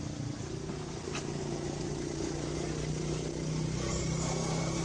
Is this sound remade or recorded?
recorded